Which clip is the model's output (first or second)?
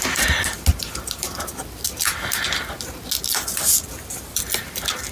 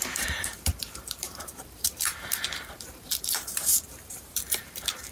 second